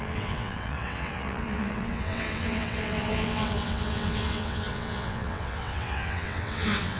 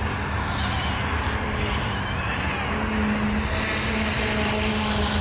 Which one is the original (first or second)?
second